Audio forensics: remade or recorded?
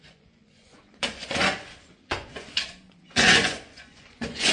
remade